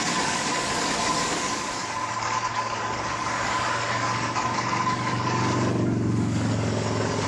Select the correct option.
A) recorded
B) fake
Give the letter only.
B